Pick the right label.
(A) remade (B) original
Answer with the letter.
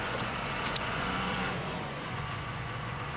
A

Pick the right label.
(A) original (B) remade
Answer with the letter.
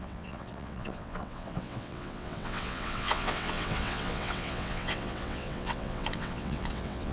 B